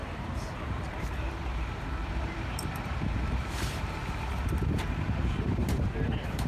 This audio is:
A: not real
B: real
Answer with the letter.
A